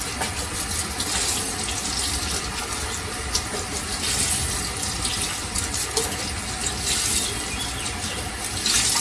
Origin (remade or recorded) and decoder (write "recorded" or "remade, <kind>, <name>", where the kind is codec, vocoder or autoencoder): recorded